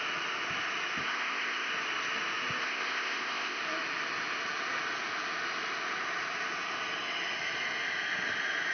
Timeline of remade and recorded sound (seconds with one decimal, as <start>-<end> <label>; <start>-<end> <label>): 0.0-1.0 recorded; 1.0-1.7 remade; 1.7-2.6 recorded; 2.6-3.6 remade; 3.6-8.7 recorded